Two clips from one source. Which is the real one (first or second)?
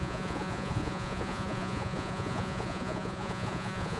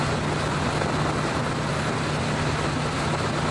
second